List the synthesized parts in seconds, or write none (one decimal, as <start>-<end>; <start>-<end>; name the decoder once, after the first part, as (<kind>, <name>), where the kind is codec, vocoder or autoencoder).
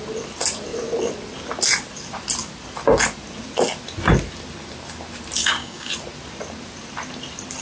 5.4-5.9 (codec, DAC)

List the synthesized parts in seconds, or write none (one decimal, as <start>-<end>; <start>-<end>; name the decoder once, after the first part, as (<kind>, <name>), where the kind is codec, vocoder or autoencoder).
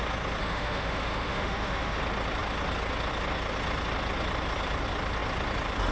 0.4-2.0 (autoencoder, DAC-VAE)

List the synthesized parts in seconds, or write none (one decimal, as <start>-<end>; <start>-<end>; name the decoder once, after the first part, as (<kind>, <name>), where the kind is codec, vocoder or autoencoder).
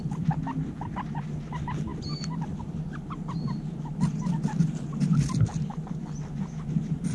none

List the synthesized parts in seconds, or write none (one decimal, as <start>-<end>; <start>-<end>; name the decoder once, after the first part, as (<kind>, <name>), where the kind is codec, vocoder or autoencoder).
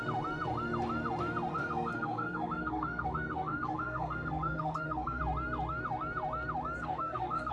1.5-5.2 (codec, SNAC); 6.8-7.5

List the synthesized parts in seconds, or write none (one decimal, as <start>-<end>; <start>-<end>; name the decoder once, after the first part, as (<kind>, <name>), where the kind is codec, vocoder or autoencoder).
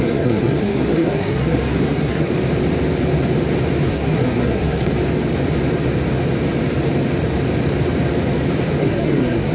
0.0-2.3 (codec, SNAC); 3.9-4.9; 8.8-9.5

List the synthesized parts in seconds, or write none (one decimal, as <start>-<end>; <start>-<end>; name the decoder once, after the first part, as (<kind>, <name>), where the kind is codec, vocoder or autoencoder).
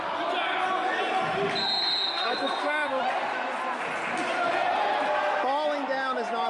2.1-3.0 (codec, SNAC)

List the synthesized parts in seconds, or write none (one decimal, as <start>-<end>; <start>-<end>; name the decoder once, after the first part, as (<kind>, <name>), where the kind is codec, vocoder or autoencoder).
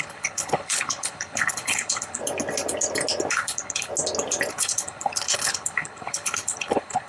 0.0-2.2 (codec, HILCodec); 3.3-3.9; 4.5-7.1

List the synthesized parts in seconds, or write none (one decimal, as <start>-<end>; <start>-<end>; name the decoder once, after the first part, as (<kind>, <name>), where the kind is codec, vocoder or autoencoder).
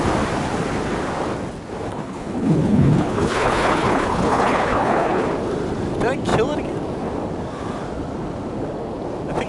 1.9-5.3 (codec, HILCodec)